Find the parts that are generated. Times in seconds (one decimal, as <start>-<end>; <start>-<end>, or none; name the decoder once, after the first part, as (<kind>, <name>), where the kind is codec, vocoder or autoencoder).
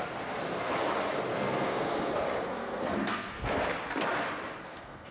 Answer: 1.3-2.1 (codec, SNAC); 2.5-3.6; 4.6-5.1